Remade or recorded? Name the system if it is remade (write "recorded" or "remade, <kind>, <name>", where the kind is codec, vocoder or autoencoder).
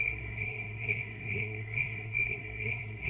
remade, codec, SNAC